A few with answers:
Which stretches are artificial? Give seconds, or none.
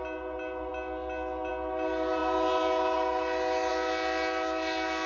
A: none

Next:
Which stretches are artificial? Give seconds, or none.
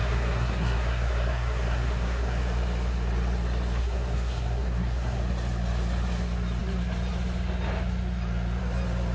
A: 0.0-2.4; 3.8-5.2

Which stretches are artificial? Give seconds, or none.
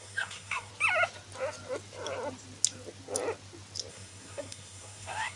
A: 0.0-0.7; 3.9-5.4